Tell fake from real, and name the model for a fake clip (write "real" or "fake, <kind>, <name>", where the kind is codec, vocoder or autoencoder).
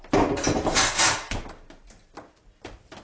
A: real